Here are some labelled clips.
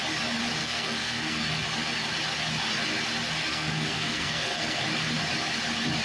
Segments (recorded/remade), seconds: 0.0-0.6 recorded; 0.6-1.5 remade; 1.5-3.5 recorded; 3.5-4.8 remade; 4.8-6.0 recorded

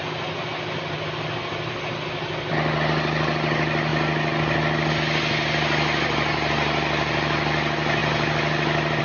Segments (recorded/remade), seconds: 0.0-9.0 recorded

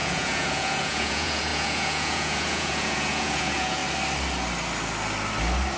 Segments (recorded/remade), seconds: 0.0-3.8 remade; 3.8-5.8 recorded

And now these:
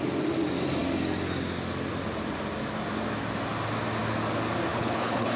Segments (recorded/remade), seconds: 0.0-4.7 recorded; 4.7-5.4 remade

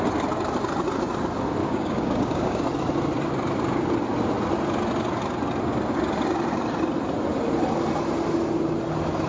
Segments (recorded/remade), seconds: 0.0-1.6 recorded; 1.6-2.6 remade; 2.6-9.3 recorded

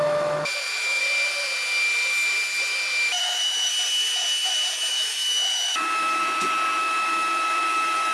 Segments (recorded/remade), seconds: 0.0-1.0 remade; 1.0-3.1 recorded; 3.1-3.7 remade; 3.7-4.9 recorded; 4.9-6.2 remade; 6.2-6.8 recorded; 6.8-8.1 remade

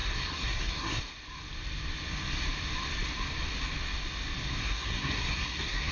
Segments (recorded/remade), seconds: 0.0-1.0 remade; 1.0-4.6 recorded; 4.6-5.9 remade